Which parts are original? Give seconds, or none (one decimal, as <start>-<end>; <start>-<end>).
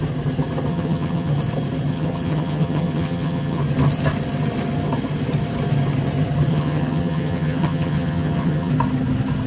0.0-0.7; 1.3-1.9; 3.6-6.5; 8.7-9.5